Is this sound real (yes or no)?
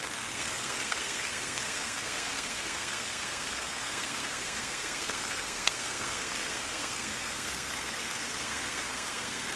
no